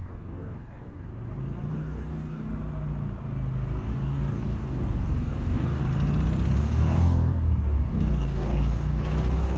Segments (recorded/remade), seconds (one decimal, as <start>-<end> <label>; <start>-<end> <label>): 0.0-1.1 remade; 1.1-1.7 recorded; 1.7-2.5 remade; 2.5-3.9 recorded; 3.9-5.8 remade; 5.8-6.6 recorded; 6.6-9.6 remade